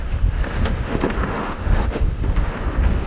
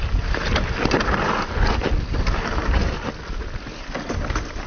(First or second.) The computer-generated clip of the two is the first